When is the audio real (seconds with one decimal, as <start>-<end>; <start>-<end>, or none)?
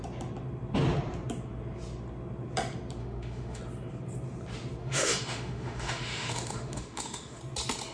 0.0-3.0; 3.6-4.8; 7.4-7.9